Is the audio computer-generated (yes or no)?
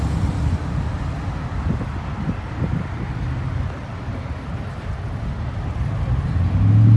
no